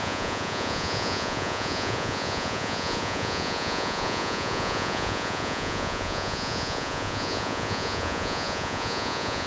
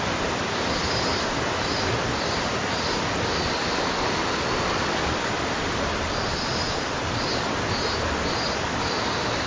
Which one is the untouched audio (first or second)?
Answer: second